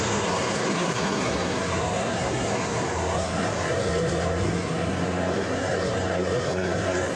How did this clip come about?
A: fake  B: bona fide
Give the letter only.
A